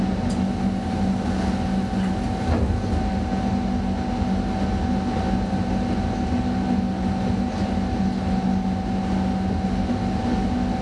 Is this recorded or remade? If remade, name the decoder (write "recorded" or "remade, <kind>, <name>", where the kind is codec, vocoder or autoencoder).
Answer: recorded